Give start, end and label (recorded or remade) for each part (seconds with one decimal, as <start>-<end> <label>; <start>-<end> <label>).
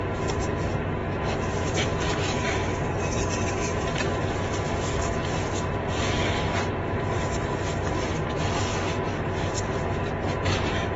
0.0-11.0 recorded